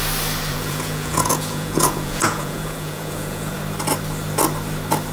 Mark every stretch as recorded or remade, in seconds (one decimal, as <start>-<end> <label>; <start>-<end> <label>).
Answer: 0.0-0.5 recorded; 0.5-3.6 remade; 3.6-5.1 recorded